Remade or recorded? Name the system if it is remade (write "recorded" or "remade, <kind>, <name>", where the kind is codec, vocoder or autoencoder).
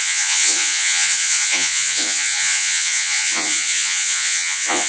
remade, vocoder, Vocos